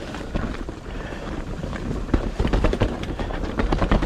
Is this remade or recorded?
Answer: remade